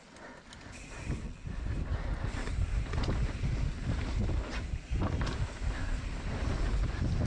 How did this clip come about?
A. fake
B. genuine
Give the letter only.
B